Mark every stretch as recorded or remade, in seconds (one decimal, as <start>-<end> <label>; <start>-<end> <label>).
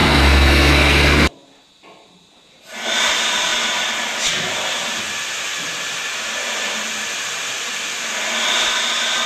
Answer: 0.0-1.3 remade; 1.3-9.3 recorded